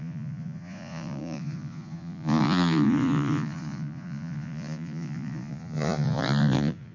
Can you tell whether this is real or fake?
fake